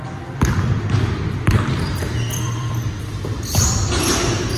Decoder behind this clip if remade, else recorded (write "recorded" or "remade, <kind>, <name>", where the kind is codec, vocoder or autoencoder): remade, vocoder, BigVGAN v2